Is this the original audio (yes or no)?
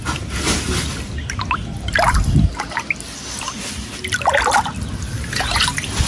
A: yes